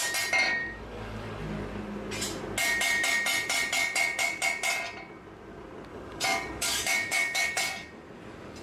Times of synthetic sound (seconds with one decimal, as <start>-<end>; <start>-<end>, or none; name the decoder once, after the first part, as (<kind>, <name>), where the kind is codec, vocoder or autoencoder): 0.6-1.4 (codec, DAC); 5.9-7.6

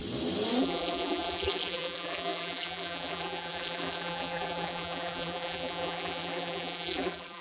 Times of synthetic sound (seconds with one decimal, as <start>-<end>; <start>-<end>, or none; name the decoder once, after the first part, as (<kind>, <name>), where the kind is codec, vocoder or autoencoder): 0.6-7.4 (vocoder, BigVGAN v2)

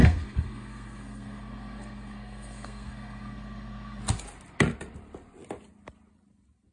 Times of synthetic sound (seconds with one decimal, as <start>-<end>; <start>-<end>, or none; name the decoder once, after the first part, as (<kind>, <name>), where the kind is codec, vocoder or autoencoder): 0.0-4.0 (codec, SNAC)

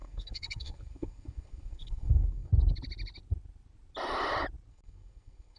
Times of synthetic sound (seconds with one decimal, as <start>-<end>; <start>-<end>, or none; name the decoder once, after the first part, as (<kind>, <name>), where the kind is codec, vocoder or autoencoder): 0.0-2.5 (codec, SNAC); 4.7-5.6

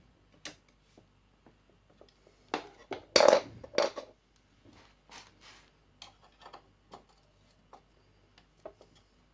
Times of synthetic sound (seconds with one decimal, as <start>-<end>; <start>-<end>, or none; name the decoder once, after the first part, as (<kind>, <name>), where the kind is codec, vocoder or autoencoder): none